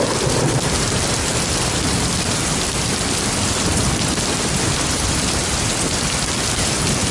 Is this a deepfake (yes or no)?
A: yes